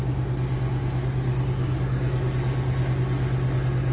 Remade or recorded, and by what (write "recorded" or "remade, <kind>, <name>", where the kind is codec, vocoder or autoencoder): recorded